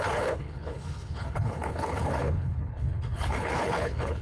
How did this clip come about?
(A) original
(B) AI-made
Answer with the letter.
B